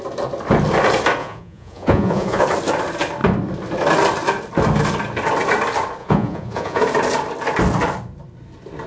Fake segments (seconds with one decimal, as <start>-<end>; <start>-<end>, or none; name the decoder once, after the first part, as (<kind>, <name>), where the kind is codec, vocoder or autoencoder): 1.2-2.4 (vocoder, Vocos); 6.0-6.8